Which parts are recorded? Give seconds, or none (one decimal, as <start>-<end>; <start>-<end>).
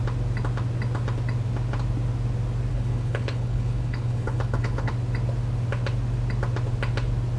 0.0-2.7; 4.9-7.4